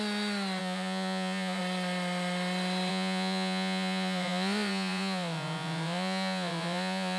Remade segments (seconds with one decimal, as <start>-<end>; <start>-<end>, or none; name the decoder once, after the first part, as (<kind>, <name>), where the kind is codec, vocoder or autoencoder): 0.6-1.6 (vocoder, Vocos); 2.9-7.2